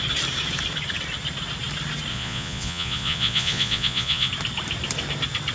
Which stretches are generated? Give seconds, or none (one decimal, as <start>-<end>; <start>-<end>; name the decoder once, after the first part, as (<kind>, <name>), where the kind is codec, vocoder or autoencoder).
2.1-4.3 (vocoder, Vocos)